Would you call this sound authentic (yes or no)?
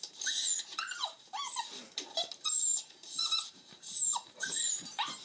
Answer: no